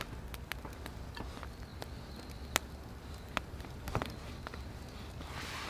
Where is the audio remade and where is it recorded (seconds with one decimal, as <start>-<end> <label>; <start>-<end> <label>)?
0.0-5.7 recorded